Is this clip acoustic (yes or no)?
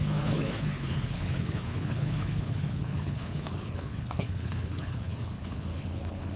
no